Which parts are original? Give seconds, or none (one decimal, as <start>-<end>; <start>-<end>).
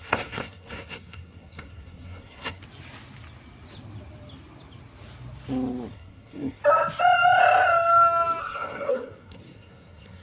2.6-5.9; 6.6-8.4